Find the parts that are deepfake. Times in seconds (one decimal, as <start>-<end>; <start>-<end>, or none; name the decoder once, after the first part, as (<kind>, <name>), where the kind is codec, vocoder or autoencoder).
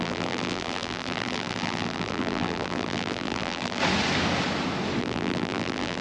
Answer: 0.0-3.8 (vocoder, BigVGAN v2); 5.0-6.0